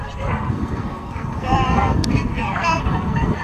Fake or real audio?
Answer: fake